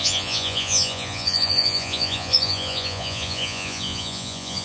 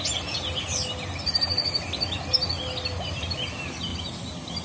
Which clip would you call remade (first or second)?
first